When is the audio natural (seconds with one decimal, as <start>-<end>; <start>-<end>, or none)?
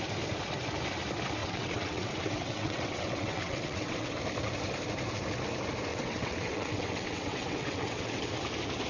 0.0-1.4; 4.2-5.9; 8.2-8.9